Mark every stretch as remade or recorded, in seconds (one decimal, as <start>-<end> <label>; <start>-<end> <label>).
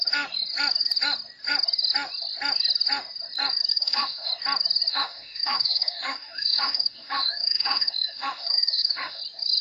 0.0-3.7 recorded; 3.7-4.3 remade; 4.3-4.9 recorded; 4.9-9.2 remade; 9.2-9.6 recorded